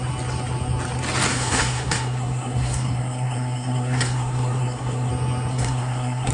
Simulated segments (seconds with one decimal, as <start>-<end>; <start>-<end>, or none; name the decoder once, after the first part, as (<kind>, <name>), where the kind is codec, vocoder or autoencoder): 1.3-5.1 (codec, SNAC); 5.5-6.3